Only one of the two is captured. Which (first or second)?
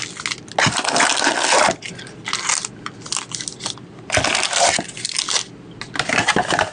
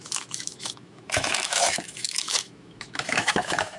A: first